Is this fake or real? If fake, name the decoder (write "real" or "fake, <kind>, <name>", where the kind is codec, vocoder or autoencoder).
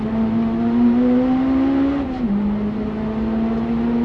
real